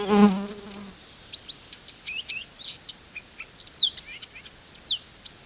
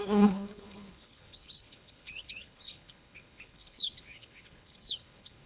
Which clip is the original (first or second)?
first